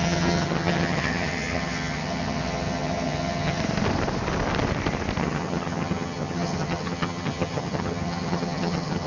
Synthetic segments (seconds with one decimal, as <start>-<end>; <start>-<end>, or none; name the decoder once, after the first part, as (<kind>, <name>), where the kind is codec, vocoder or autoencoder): 0.0-3.6 (vocoder, HiFi-GAN); 5.2-9.1